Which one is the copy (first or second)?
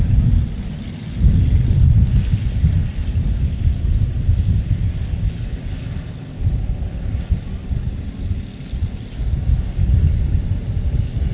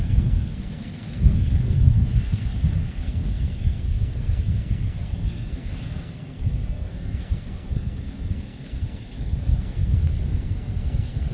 second